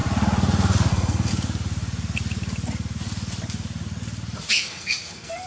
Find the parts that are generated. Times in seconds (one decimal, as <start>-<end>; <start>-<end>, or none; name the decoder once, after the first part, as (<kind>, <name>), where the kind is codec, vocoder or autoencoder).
0.9-1.3 (codec, SNAC); 4.5-5.5